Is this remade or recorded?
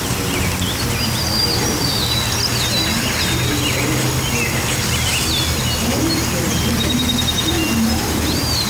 recorded